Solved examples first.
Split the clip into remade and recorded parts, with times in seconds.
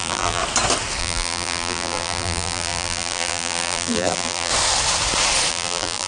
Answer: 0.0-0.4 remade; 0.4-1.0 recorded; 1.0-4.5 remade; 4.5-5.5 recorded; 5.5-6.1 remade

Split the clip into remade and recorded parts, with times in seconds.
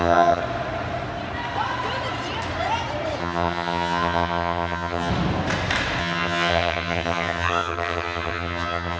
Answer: 0.0-0.4 remade; 0.4-3.2 recorded; 3.2-5.1 remade; 5.1-6.0 recorded; 6.0-9.0 remade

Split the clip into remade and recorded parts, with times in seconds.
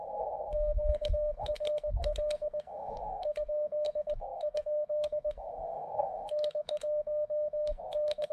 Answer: 0.0-8.3 remade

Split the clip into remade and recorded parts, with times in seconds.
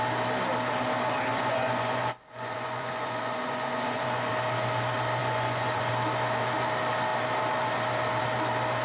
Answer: 0.0-1.3 recorded; 1.3-4.3 remade; 4.3-5.2 recorded; 5.2-5.9 remade; 5.9-8.8 recorded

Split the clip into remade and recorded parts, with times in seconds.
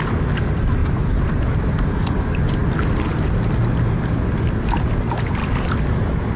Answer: 0.0-0.8 recorded; 0.8-1.6 remade; 1.6-2.6 recorded; 2.6-3.1 remade; 3.1-5.4 recorded; 5.4-6.4 remade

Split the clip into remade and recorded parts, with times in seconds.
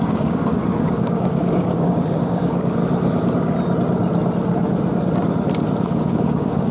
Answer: 0.0-2.8 remade; 2.8-6.1 recorded; 6.1-6.7 remade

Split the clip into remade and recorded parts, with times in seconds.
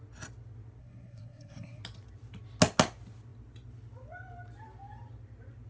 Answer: 0.0-0.8 recorded; 0.8-1.8 remade; 1.8-5.7 recorded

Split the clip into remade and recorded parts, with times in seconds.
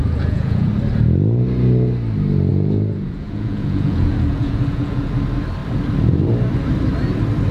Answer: 0.0-0.7 remade; 0.7-2.5 recorded; 2.5-5.1 remade; 5.1-7.5 recorded